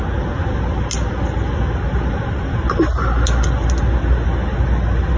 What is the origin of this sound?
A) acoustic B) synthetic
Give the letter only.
A